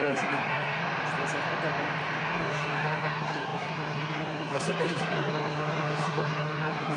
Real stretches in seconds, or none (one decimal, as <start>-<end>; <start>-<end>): 0.8-2.2